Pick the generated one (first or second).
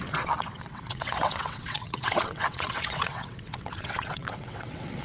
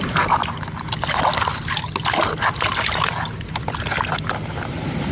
first